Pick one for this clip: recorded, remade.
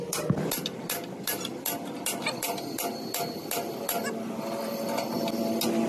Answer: recorded